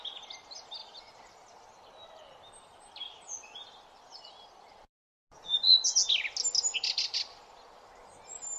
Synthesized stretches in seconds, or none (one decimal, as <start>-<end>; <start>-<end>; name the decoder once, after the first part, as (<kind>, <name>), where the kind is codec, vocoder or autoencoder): 0.8-5.1 (vocoder, BigVGAN v2)